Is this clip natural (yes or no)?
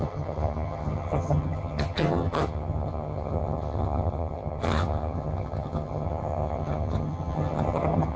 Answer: no